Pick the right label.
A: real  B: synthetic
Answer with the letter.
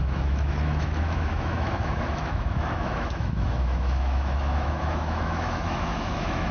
B